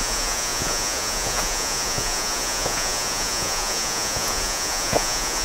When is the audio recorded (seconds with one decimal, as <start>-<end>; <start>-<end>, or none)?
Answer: none